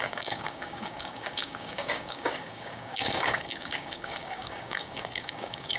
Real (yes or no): no